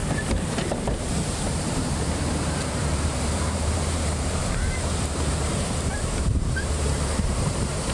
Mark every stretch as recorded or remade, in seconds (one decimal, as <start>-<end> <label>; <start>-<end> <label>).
0.0-0.5 recorded; 0.5-7.9 remade